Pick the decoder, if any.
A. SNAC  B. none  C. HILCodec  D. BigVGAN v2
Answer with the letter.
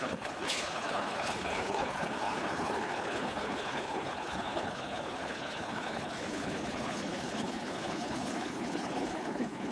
C